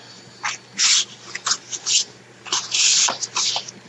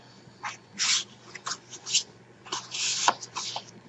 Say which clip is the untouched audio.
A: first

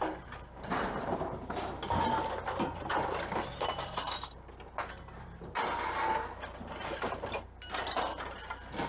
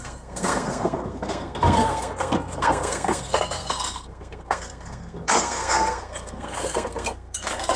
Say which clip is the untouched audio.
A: first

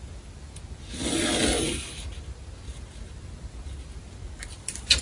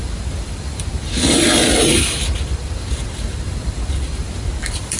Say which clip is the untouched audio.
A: first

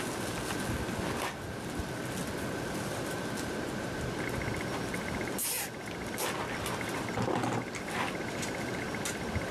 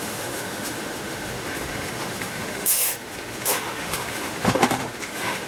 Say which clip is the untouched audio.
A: first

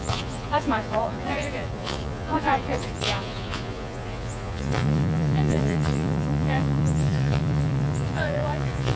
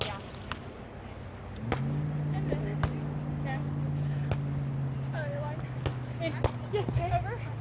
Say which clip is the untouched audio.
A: second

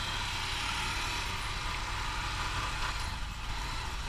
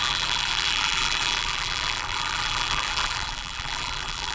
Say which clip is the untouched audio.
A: first